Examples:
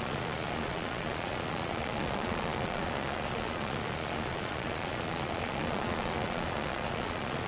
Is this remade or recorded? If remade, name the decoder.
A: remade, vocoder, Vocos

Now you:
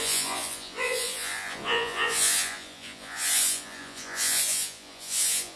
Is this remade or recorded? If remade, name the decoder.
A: remade, vocoder, Vocos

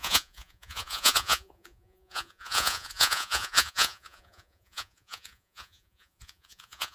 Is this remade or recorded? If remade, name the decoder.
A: remade, vocoder, Vocos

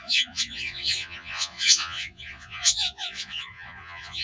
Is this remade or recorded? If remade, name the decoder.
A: remade, vocoder, Vocos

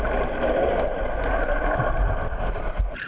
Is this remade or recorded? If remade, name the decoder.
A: recorded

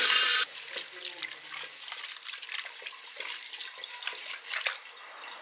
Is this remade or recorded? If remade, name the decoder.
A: recorded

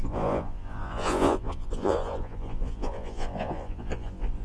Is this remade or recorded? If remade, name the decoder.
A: remade, vocoder, Vocos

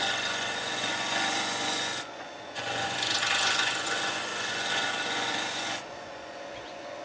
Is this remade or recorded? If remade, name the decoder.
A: remade, vocoder, Vocos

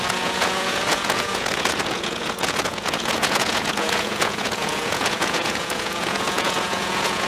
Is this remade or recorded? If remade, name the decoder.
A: remade, vocoder, Vocos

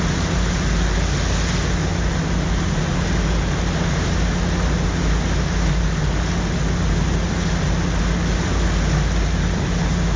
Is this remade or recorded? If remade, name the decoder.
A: recorded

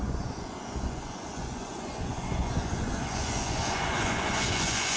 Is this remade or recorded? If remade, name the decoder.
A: remade, vocoder, Vocos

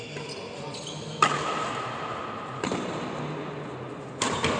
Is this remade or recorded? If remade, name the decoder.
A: recorded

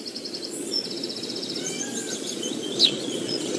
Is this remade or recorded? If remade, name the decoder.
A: remade, vocoder, Vocos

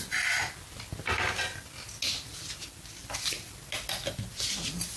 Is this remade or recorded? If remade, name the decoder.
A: recorded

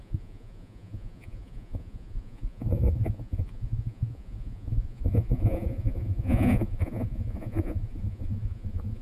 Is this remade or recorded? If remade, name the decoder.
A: remade, vocoder, Vocos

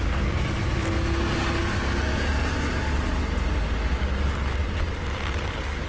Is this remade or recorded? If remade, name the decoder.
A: recorded